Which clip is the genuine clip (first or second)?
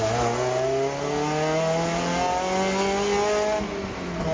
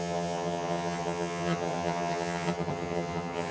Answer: first